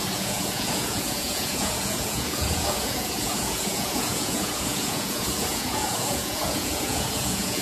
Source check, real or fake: fake